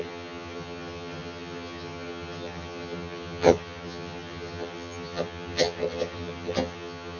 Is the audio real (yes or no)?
no